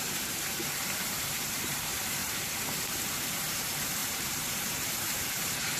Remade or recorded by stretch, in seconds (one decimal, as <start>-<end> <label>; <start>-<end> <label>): 0.0-5.8 remade